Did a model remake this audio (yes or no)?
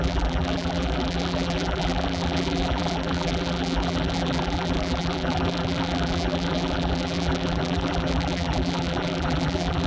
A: yes